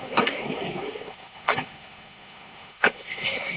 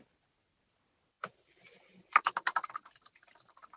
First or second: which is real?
second